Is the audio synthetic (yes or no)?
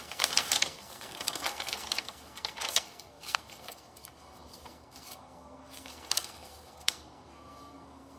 yes